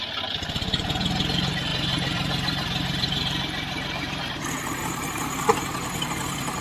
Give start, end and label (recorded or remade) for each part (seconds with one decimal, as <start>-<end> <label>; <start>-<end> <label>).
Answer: 0.0-1.7 recorded; 1.7-4.2 remade; 4.2-6.6 recorded